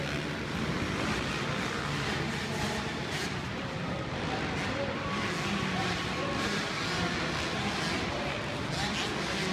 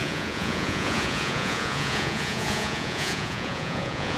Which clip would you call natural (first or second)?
first